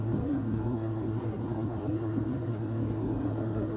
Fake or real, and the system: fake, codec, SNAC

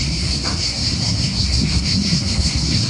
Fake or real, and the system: fake, codec, SNAC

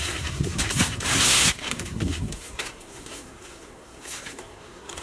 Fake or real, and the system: fake, codec, SNAC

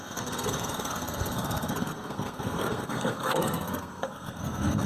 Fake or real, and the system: fake, codec, SNAC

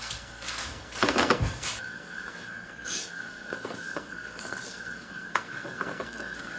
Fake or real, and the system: fake, codec, SNAC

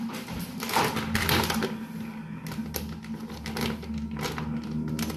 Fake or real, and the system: real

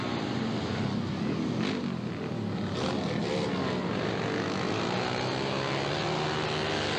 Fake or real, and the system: real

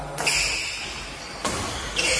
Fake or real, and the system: real